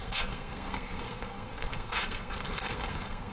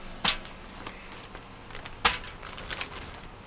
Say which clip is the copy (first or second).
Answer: first